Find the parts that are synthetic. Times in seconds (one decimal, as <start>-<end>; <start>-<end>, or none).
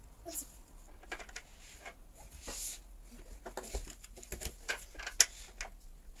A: 1.5-2.8; 3.8-4.3